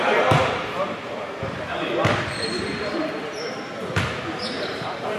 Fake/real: fake